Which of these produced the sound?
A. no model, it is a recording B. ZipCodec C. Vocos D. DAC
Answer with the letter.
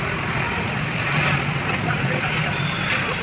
A